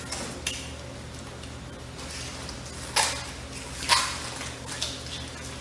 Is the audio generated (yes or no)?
no